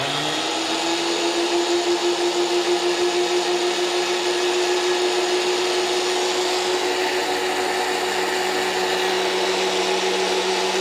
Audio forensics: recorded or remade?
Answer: recorded